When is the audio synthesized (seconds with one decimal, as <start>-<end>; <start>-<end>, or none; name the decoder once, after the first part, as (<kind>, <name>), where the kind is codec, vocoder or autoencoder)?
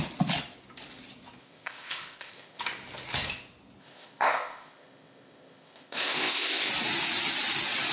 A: 1.4-2.6 (codec, ZipCodec); 3.8-6.7